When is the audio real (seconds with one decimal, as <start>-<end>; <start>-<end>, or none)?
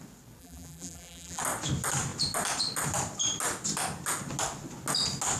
0.0-0.4; 1.4-5.4